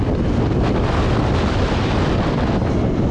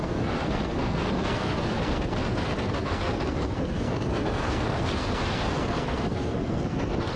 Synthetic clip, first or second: second